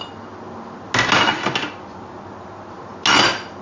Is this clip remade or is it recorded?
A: recorded